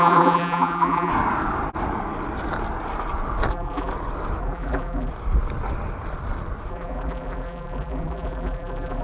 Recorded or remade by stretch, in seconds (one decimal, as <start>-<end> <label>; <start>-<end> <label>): 0.0-1.1 remade; 1.1-3.5 recorded; 3.5-3.9 remade; 3.9-4.4 recorded; 4.4-5.1 remade; 5.1-6.7 recorded; 6.7-9.0 remade